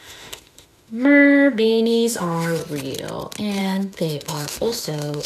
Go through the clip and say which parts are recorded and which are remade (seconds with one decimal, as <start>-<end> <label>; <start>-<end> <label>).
0.0-2.6 remade; 2.6-3.6 recorded; 3.6-5.3 remade